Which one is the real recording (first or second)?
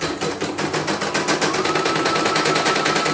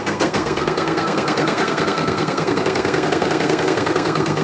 first